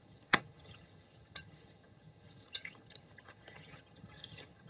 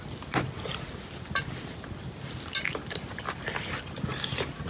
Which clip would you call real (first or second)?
second